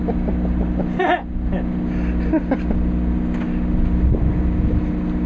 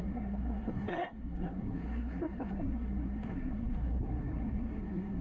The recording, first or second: first